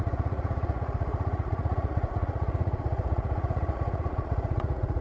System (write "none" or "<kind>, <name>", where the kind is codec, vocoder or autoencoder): vocoder, Vocos